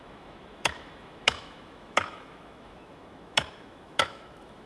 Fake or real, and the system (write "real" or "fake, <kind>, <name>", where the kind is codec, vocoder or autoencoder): fake, autoencoder, DAC-VAE